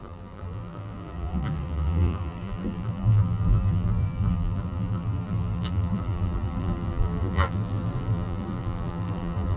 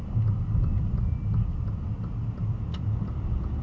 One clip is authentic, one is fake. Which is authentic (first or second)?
second